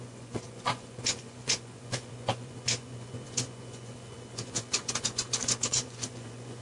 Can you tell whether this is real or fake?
fake